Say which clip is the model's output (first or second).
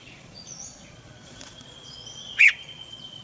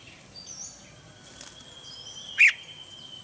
first